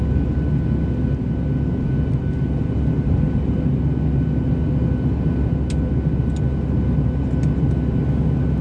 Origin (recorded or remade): recorded